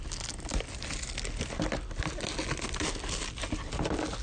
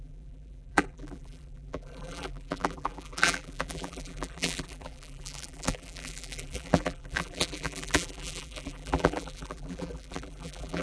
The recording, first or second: first